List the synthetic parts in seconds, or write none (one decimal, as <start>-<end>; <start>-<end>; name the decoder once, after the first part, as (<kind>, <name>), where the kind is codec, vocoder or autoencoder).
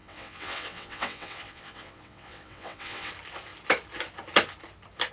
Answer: 0.0-3.1 (vocoder, WaveNeXt)